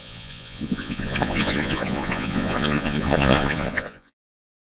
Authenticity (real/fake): fake